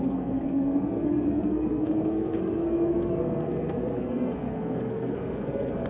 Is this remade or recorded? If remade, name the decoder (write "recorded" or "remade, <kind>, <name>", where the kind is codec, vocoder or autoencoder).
remade, codec, SNAC